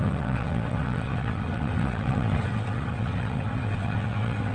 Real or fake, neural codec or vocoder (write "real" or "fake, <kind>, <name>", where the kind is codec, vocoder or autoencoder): fake, vocoder, WaveNeXt